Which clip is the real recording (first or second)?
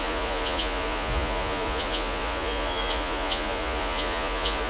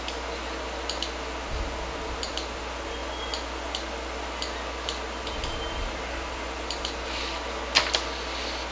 second